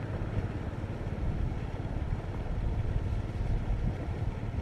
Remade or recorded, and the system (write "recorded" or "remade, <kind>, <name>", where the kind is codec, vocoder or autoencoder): recorded